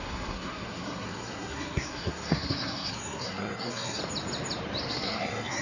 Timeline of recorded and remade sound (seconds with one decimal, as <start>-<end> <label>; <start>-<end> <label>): 0.0-4.0 remade; 4.0-4.9 recorded; 4.9-5.6 remade